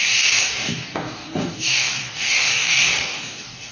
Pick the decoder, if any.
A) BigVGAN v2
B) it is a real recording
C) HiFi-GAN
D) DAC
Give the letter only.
D